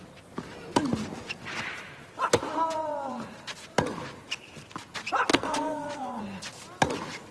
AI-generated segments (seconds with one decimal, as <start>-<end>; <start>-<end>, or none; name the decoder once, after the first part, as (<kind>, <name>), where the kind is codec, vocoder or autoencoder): 5.3-6.2 (codec, SNAC)